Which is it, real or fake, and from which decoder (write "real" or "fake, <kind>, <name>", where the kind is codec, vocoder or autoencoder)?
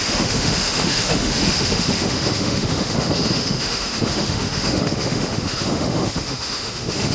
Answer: fake, autoencoder, DAC-VAE